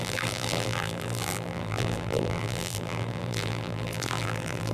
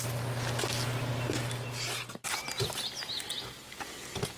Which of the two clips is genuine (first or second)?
second